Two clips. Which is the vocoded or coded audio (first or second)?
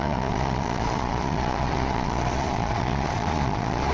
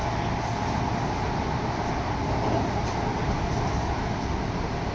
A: first